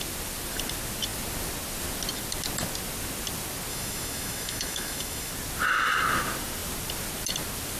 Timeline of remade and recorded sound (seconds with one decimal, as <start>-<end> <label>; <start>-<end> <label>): 0.0-3.7 recorded; 3.7-5.3 remade; 5.3-7.8 recorded